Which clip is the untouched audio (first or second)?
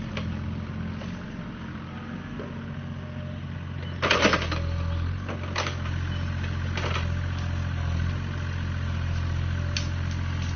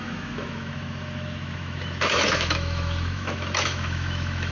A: first